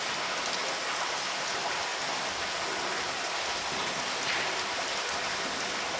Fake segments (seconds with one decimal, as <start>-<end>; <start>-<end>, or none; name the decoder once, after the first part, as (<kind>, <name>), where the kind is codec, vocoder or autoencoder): none